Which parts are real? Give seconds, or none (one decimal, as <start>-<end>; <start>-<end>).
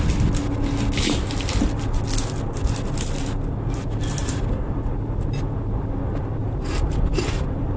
0.0-4.2; 4.9-6.4